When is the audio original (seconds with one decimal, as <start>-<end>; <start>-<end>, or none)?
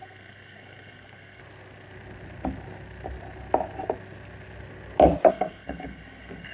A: 1.4-5.3